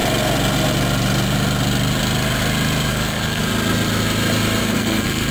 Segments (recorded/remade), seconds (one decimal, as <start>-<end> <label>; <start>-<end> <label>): 0.0-2.9 recorded; 2.9-3.4 remade; 3.4-4.6 recorded; 4.6-5.3 remade